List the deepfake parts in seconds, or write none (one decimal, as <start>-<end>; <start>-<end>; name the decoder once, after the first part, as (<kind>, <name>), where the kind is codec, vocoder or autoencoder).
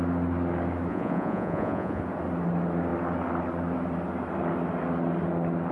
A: 0.9-2.0 (vocoder, Vocos)